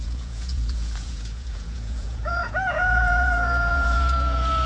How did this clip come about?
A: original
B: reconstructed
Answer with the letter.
B